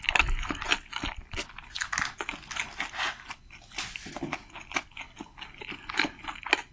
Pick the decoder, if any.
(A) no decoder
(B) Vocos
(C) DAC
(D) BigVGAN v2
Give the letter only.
A